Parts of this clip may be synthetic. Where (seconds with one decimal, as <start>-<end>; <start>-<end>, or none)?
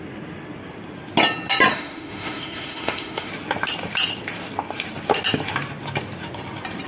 1.7-3.3